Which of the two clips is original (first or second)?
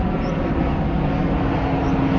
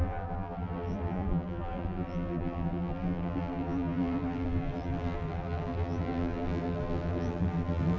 first